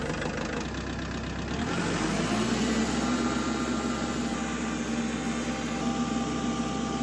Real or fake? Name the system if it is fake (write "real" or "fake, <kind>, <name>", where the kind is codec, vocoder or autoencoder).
real